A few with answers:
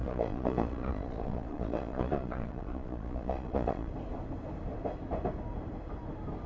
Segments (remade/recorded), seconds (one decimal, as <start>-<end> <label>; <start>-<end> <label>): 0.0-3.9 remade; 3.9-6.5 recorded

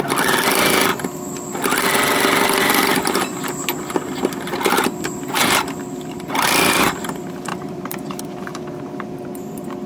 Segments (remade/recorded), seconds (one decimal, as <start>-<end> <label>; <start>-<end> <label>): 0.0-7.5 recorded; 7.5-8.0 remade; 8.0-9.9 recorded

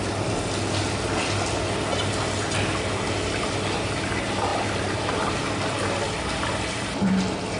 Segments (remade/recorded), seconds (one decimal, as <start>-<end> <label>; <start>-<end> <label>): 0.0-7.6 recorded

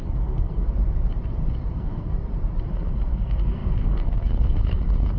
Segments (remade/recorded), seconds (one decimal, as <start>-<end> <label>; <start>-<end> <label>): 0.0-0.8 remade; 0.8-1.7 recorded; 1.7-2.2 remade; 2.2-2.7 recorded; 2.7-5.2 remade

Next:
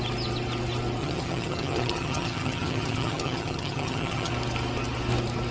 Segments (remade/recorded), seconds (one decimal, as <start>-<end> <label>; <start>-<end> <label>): 0.0-1.0 recorded; 1.0-4.3 remade; 4.3-5.5 recorded